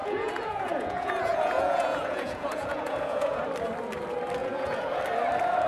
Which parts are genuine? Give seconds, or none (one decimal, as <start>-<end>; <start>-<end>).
3.4-4.4; 5.0-5.7